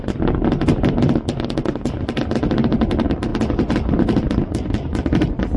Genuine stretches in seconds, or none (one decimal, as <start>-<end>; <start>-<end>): 0.0-5.6